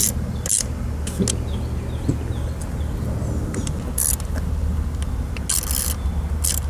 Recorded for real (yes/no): yes